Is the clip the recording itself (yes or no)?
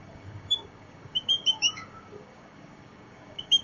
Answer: no